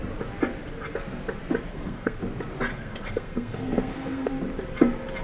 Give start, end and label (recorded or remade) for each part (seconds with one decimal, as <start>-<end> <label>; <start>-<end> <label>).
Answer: 0.0-1.7 recorded; 1.7-2.2 remade; 2.2-2.7 recorded; 2.7-4.3 remade; 4.3-5.2 recorded